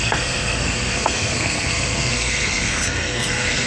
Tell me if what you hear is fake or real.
fake